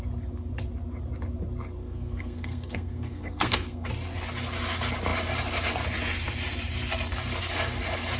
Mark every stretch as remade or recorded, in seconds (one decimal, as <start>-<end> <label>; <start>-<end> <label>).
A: 0.0-1.8 recorded; 1.8-3.9 remade; 3.9-8.2 recorded